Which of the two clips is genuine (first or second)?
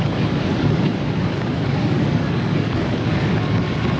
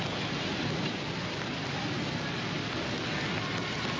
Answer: second